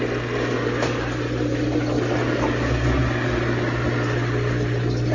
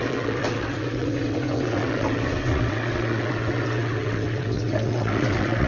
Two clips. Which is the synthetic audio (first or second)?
second